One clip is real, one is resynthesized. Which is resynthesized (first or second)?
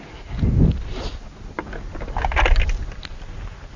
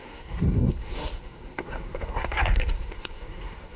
second